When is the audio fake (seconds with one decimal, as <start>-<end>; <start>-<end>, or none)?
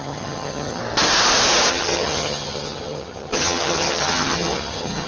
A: 0.0-0.8; 1.7-5.1